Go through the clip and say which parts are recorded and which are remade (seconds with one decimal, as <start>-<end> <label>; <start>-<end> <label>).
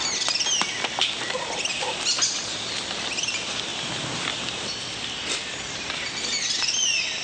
0.0-3.7 recorded; 3.7-4.9 remade; 4.9-7.2 recorded